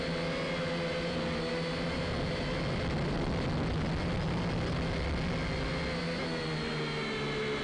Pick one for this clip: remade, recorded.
recorded